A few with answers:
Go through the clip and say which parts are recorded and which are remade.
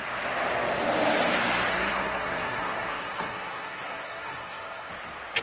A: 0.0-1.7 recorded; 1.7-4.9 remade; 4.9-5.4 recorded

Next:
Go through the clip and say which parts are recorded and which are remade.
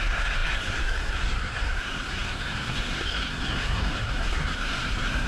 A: 0.0-5.3 remade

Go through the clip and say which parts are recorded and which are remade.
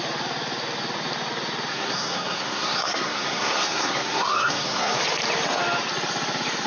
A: 0.0-1.7 recorded; 1.7-5.0 remade; 5.0-6.7 recorded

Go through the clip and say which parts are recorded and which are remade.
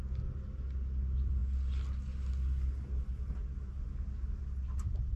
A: 0.0-5.2 recorded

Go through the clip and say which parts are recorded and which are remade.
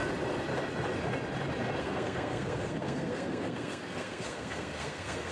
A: 0.0-1.8 recorded; 1.8-5.3 remade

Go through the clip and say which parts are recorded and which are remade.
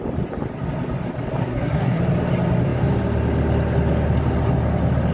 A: 0.0-1.4 recorded; 1.4-2.0 remade; 2.0-5.1 recorded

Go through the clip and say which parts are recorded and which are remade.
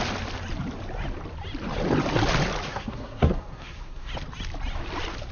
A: 0.0-2.7 recorded; 2.7-4.1 remade; 4.1-5.3 recorded